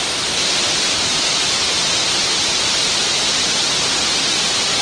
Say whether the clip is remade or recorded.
recorded